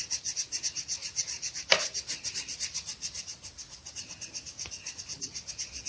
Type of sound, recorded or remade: recorded